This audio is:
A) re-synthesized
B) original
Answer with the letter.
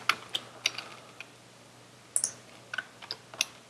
B